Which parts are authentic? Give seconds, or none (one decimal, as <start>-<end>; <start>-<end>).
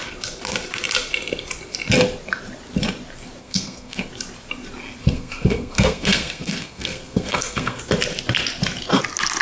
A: 0.0-3.4; 4.1-5.0; 7.8-9.4